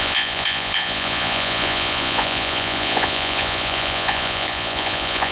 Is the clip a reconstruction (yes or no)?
yes